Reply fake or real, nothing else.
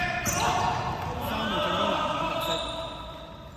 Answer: real